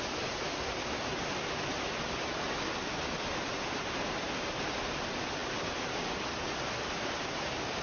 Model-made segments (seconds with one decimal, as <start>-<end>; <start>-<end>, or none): none